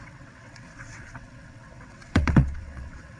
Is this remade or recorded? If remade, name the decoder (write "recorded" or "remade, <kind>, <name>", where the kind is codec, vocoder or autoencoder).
remade, vocoder, WaveNeXt